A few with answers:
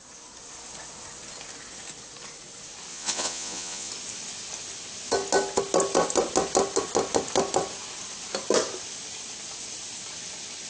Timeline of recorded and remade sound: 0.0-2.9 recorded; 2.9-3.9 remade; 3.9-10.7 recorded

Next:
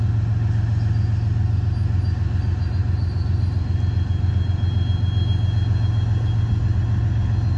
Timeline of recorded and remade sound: 0.0-7.6 recorded

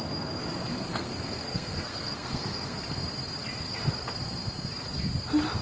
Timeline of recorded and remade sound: 0.0-0.9 recorded; 0.9-2.8 remade; 2.8-5.6 recorded

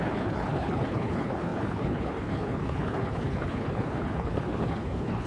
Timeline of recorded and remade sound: 0.0-5.3 remade

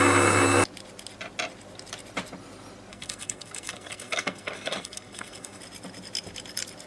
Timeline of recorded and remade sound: 0.0-2.9 recorded; 2.9-5.6 remade; 5.6-6.9 recorded

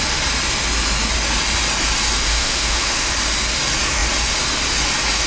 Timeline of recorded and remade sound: 0.0-2.3 recorded; 2.3-3.1 remade; 3.1-5.3 recorded

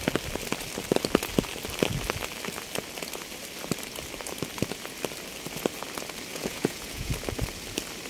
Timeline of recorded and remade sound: 0.0-6.3 recorded; 6.3-7.1 remade; 7.1-8.1 recorded